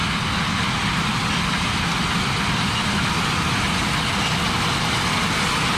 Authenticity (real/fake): real